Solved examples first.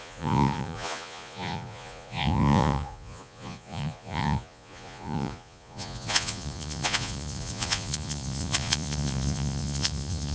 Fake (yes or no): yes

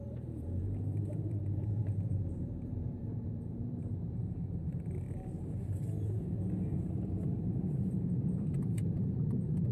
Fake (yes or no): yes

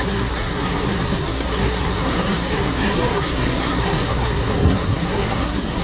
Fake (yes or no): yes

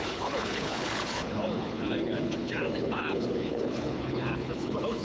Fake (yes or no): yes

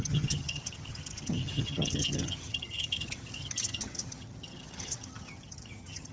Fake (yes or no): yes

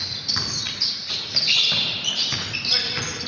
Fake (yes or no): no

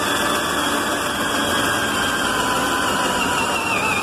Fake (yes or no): no